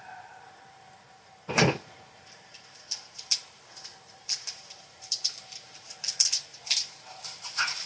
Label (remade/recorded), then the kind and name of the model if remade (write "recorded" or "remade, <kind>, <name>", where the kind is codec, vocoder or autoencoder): remade, vocoder, BigVGAN v2